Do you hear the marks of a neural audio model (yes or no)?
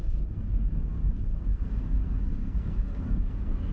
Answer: yes